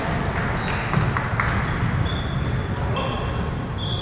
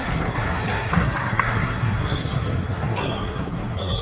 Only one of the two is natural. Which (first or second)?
first